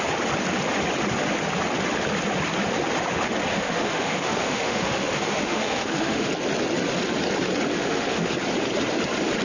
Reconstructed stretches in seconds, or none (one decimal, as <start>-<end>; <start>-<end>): 3.5-6.3; 7.7-8.3